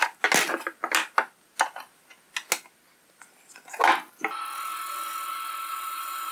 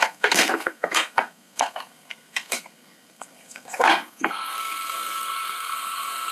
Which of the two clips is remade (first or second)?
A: second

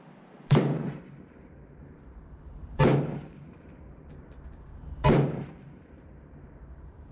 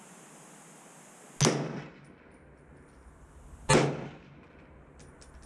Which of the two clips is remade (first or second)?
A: first